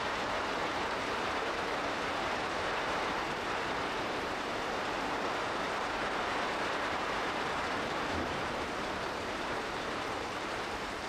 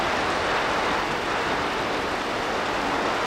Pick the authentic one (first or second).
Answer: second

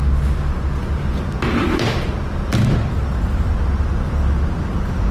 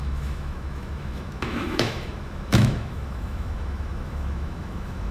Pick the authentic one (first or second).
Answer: first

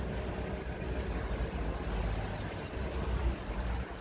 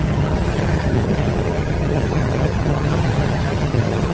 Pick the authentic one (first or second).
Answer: first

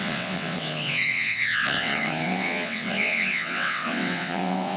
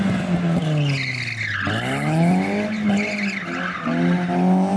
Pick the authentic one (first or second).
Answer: second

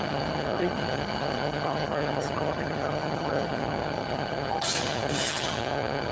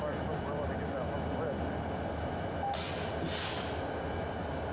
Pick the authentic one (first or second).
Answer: second